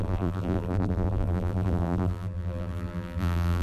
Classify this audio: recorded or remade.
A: remade